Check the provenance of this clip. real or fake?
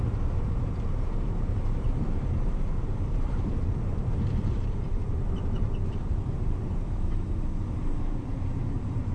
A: fake